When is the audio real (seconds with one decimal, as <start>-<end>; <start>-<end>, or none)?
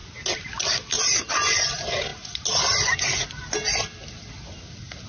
0.0-5.1